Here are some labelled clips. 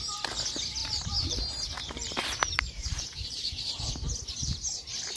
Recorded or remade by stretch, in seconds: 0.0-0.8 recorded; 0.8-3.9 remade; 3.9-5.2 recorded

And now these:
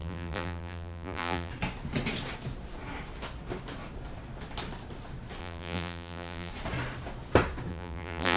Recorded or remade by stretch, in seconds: 0.0-1.5 remade; 1.5-5.4 recorded; 5.4-6.5 remade; 6.5-7.7 recorded; 7.7-8.4 remade